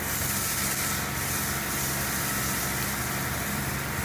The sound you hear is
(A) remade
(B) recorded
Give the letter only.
B